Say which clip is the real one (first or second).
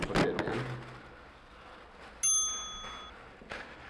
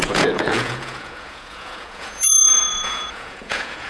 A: first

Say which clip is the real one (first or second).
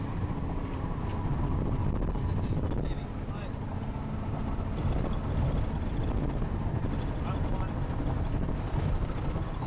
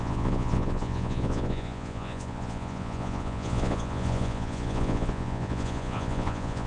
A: first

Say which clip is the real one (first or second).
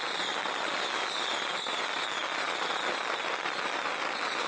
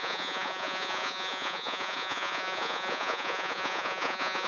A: first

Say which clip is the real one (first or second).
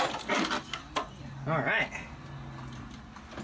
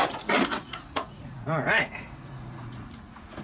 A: first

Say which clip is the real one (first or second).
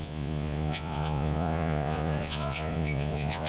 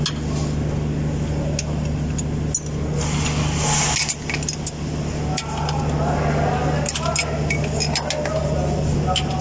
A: second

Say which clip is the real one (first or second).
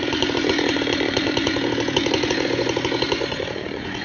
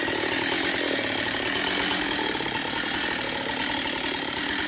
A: second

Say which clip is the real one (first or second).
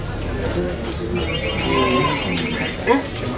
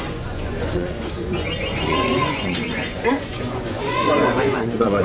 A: first